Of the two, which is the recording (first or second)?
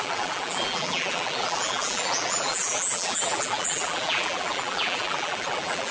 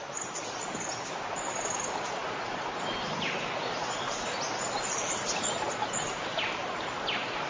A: second